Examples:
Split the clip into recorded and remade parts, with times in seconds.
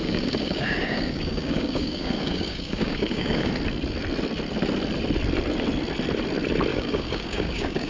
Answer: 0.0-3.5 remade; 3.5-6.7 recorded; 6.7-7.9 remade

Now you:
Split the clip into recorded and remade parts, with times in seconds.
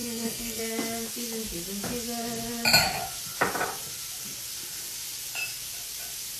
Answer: 0.0-0.6 remade; 0.6-6.4 recorded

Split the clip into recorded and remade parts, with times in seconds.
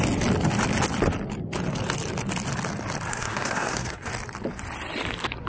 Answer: 0.0-3.1 recorded; 3.1-4.1 remade; 4.1-5.5 recorded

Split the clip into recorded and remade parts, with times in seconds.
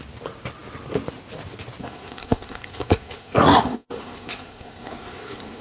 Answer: 0.0-1.8 recorded; 1.8-5.6 remade